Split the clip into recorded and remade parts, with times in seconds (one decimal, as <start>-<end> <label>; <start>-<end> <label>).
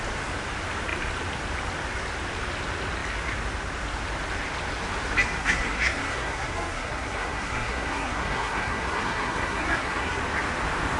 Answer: 0.0-5.4 recorded; 5.4-10.2 remade; 10.2-11.0 recorded